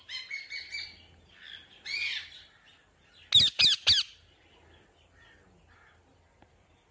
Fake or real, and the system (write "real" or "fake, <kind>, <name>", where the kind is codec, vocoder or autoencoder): real